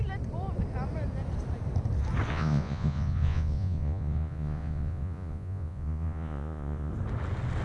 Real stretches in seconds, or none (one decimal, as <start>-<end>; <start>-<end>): 0.0-2.3; 6.9-7.6